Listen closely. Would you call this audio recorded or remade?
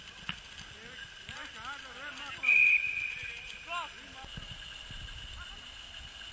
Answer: recorded